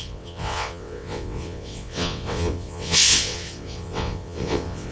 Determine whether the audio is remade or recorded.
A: remade